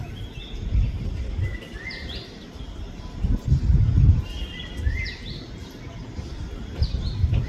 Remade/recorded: recorded